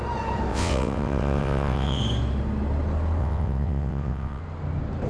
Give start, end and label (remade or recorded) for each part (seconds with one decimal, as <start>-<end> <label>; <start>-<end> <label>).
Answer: 0.0-0.5 recorded; 0.5-2.0 remade; 2.0-3.2 recorded; 3.2-4.4 remade; 4.4-5.1 recorded